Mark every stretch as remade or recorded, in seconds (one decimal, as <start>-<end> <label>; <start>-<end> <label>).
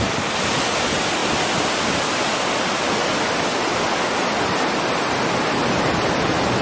0.0-6.6 recorded